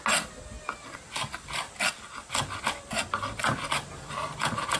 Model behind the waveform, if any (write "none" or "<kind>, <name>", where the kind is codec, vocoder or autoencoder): none